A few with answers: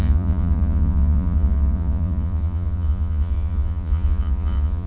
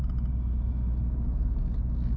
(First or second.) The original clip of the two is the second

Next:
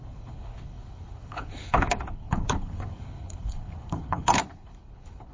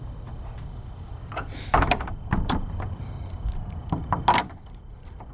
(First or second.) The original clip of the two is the second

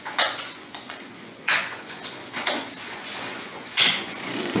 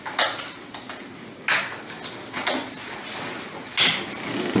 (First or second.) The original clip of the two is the second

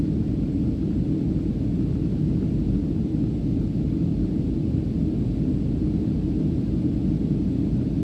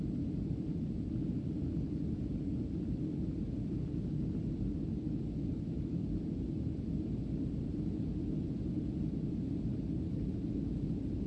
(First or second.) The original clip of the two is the first